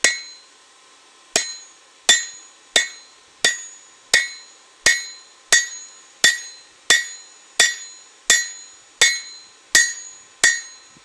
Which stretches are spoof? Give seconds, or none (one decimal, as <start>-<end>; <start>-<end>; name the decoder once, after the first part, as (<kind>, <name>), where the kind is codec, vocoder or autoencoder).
none